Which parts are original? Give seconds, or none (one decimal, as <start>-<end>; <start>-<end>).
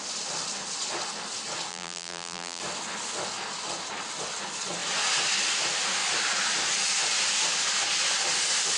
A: 0.0-1.7; 2.6-8.8